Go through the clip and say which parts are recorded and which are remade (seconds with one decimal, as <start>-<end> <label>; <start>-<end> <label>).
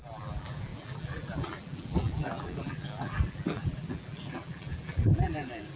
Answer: 0.0-5.8 remade